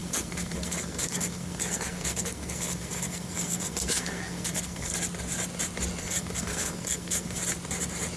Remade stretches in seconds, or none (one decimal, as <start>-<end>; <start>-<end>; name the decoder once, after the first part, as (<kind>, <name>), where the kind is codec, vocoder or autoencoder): 0.0-4.9 (codec, SNAC); 6.0-7.4